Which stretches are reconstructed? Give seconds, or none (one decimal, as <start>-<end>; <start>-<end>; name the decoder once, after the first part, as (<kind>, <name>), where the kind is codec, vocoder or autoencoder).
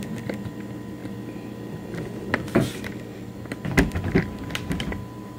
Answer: none